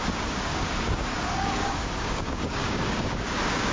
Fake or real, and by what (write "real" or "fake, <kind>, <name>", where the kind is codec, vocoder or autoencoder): fake, codec, DAC